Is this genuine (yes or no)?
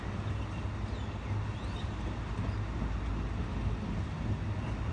yes